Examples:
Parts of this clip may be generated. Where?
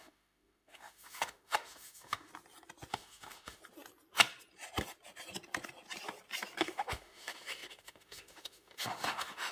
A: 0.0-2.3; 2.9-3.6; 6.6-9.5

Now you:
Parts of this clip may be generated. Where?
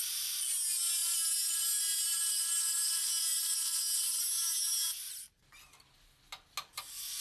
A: none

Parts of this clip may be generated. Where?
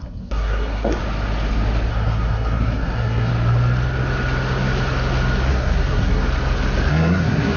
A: 0.0-1.0; 1.9-3.3; 5.5-6.2; 6.9-7.6